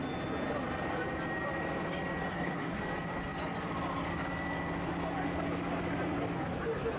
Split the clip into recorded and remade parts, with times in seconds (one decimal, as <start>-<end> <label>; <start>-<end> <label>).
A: 0.0-2.3 recorded; 2.3-2.8 remade; 2.8-7.0 recorded